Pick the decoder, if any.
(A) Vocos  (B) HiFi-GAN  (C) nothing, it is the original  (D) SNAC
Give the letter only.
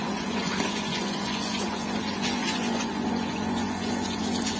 A